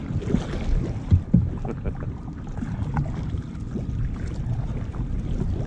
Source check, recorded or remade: recorded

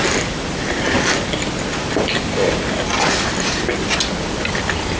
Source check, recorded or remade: recorded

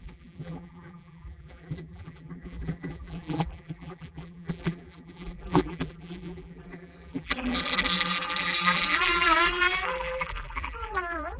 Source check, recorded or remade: remade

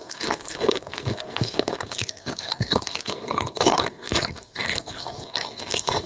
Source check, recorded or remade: remade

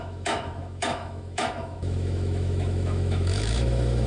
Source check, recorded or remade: remade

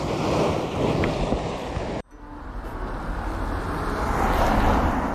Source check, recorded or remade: recorded